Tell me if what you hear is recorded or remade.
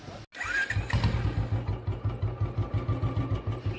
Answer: recorded